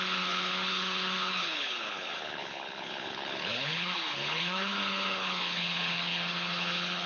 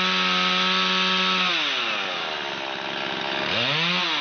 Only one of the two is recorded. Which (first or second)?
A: second